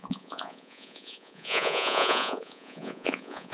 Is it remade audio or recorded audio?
remade